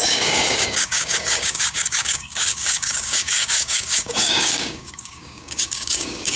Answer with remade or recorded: remade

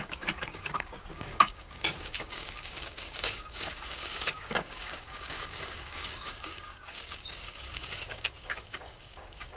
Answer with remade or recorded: remade